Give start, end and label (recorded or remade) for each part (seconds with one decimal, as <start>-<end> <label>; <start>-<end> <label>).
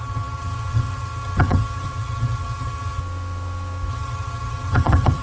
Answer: 0.0-3.0 remade; 3.0-3.9 recorded; 3.9-5.2 remade